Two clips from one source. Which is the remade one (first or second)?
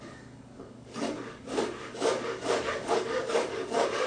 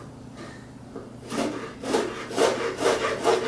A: first